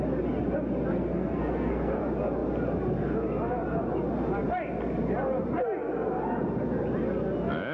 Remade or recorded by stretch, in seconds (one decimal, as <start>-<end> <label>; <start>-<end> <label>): 0.0-0.9 recorded; 0.9-2.0 remade; 2.0-7.7 recorded